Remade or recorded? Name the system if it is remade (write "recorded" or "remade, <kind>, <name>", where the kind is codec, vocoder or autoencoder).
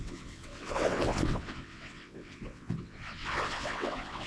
remade, vocoder, WaveNeXt